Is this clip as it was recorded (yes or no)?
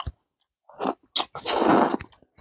yes